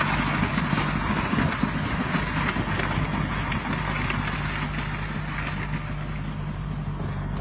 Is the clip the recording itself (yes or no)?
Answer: yes